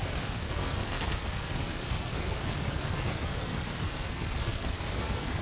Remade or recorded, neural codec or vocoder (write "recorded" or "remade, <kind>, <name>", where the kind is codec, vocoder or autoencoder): remade, codec, SNAC